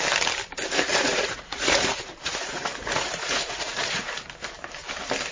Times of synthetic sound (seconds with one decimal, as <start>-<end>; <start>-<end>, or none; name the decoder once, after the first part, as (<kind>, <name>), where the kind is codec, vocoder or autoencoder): 0.9-4.1 (vocoder, Vocos)